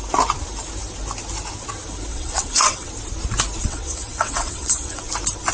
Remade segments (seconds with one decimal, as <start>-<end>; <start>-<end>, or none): 2.1-2.9; 3.6-5.0